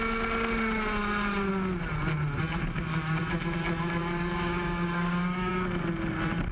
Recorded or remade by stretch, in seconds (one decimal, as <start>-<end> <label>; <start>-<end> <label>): 0.0-2.6 recorded; 2.6-3.2 remade; 3.2-4.0 recorded; 4.0-5.5 remade; 5.5-6.5 recorded